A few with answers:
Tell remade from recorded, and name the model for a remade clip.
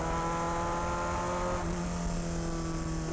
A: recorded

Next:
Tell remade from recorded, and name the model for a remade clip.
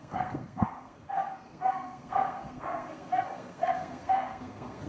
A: remade, codec, SNAC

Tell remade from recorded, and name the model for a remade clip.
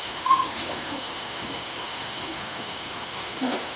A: remade, autoencoder, DAC-VAE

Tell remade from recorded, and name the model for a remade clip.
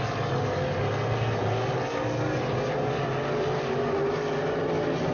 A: recorded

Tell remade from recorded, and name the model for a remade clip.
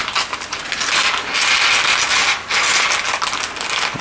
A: recorded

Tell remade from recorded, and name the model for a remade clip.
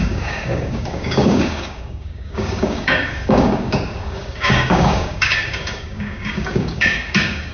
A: remade, codec, DAC